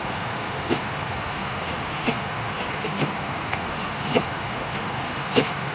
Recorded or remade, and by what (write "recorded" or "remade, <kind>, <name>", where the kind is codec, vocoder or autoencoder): remade, autoencoder, DAC-VAE